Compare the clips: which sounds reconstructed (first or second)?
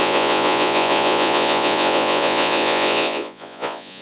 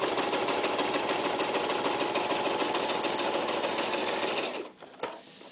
first